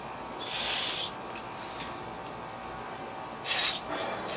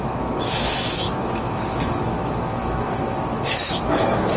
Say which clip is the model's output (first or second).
second